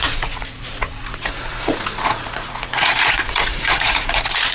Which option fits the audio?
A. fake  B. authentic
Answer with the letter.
A